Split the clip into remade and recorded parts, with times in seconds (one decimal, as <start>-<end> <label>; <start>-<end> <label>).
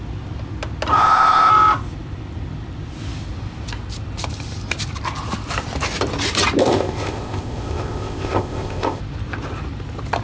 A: 0.0-0.9 recorded; 0.9-1.5 remade; 1.5-6.6 recorded; 6.6-9.0 remade; 9.0-10.2 recorded